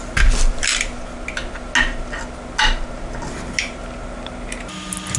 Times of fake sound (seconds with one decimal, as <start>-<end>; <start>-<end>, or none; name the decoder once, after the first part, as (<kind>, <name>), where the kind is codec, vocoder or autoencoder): none